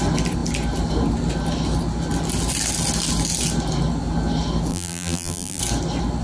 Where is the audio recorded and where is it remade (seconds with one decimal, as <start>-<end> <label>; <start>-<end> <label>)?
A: 0.0-4.7 recorded; 4.7-5.6 remade; 5.6-6.2 recorded

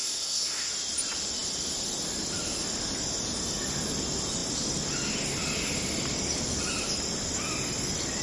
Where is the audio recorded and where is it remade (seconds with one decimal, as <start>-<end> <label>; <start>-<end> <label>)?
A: 0.0-0.7 remade; 0.7-8.2 recorded

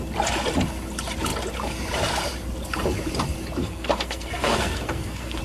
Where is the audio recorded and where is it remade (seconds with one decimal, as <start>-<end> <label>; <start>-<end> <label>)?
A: 0.0-3.6 recorded; 3.6-5.4 remade

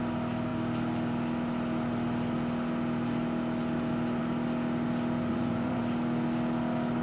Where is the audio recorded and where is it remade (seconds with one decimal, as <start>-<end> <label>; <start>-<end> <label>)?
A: 0.0-5.3 recorded; 5.3-5.8 remade; 5.8-7.0 recorded

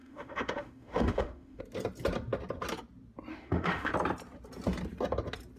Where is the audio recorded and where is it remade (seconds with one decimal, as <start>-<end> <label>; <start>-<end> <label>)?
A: 0.0-1.6 remade; 1.6-3.3 recorded; 3.3-3.9 remade; 3.9-5.6 recorded

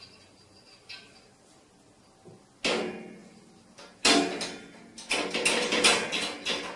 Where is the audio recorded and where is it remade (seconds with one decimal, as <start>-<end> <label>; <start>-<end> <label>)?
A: 0.0-6.8 recorded

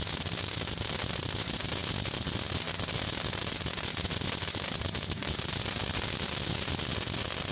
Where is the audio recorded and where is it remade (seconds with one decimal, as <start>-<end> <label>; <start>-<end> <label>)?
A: 0.0-7.5 recorded